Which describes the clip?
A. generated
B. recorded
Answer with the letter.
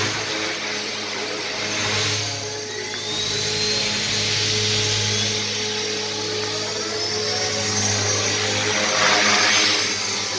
B